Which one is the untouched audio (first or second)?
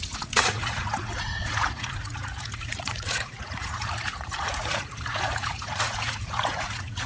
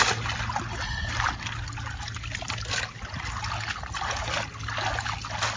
second